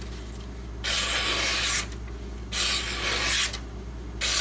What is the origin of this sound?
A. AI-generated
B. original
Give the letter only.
B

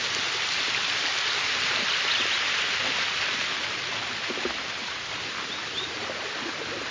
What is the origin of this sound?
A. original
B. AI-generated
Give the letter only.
A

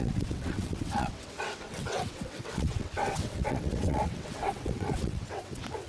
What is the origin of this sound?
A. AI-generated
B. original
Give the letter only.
A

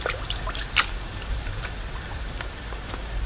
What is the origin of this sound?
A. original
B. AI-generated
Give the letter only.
A